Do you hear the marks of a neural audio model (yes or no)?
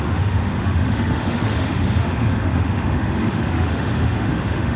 yes